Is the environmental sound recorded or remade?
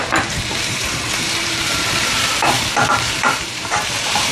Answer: remade